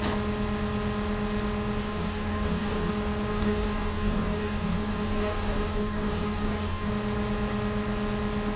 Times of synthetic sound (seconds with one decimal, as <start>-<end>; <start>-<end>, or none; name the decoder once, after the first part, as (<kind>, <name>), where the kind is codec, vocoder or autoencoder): 1.8-2.9 (codec, DAC); 3.3-6.9